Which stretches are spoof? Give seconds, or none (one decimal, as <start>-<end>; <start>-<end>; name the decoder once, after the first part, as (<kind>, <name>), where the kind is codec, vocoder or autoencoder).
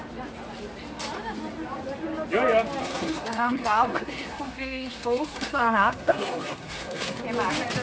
2.8-7.2 (codec, SNAC)